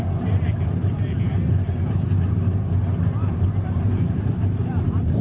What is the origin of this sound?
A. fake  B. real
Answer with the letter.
A